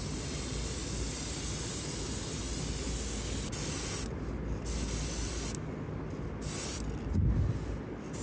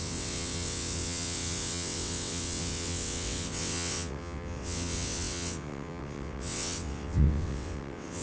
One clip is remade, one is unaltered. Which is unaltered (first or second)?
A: first